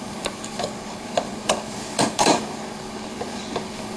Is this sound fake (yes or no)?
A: yes